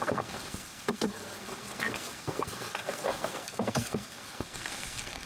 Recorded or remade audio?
remade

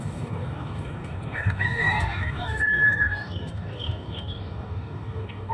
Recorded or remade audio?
remade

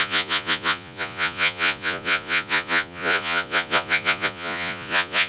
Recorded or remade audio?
remade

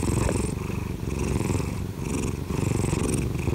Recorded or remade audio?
recorded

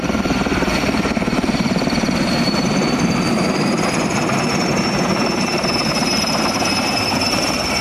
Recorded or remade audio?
remade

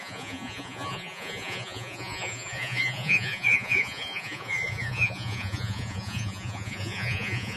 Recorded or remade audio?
remade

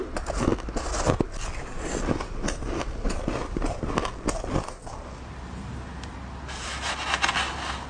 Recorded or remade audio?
recorded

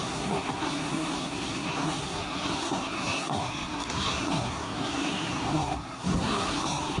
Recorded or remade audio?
remade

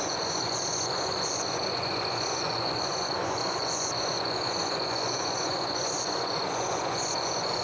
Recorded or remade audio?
remade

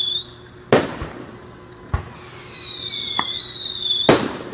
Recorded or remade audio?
recorded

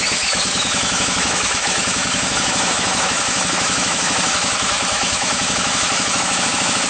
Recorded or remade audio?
remade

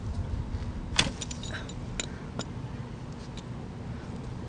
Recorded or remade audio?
recorded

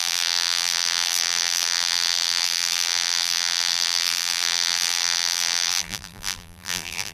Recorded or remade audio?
remade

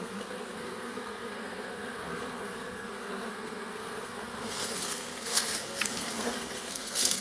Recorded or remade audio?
remade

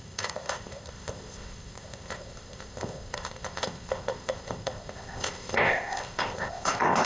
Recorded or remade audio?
remade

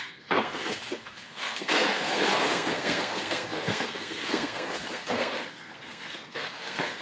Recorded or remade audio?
remade